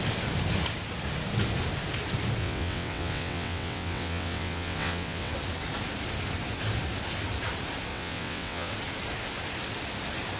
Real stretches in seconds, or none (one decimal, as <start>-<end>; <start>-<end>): 0.0-2.4; 5.3-7.9; 8.7-10.4